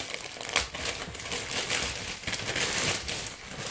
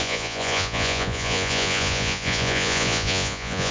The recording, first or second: first